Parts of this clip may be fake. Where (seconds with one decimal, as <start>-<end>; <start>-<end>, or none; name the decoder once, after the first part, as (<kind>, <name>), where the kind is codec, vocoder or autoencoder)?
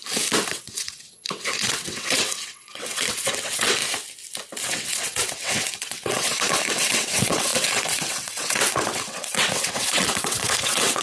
0.5-3.8 (vocoder, WaveNeXt); 4.6-11.0